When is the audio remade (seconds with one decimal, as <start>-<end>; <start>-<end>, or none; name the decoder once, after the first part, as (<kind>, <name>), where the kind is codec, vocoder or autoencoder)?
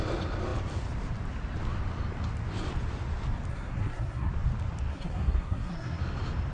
3.5-4.3 (codec, SNAC); 4.9-6.0